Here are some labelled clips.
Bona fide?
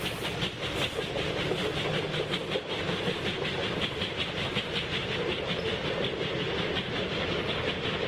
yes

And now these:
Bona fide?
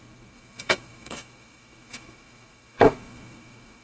no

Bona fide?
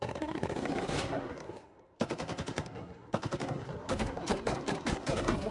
no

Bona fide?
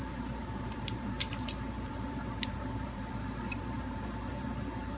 no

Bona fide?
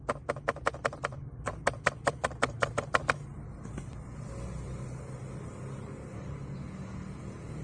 yes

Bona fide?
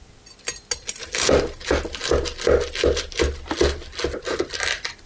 yes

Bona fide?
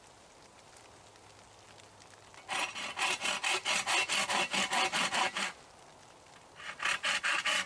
yes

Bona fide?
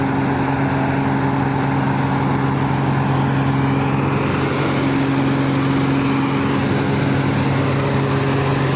yes